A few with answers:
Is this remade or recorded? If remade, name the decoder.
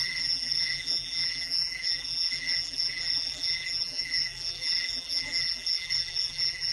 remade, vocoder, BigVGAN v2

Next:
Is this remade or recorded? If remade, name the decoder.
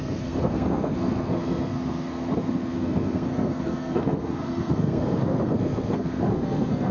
remade, codec, SNAC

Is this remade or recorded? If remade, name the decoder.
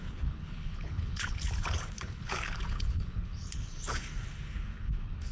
remade, codec, HILCodec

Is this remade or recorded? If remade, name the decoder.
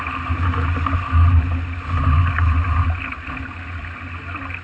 recorded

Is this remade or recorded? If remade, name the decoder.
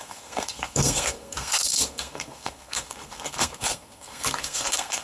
remade, codec, SNAC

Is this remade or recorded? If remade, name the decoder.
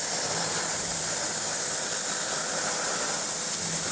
recorded